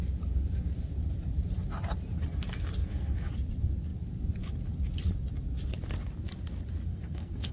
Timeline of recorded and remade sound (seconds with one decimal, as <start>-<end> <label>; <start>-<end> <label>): 0.0-2.8 recorded; 2.8-3.3 remade; 3.3-6.9 recorded; 6.9-7.5 remade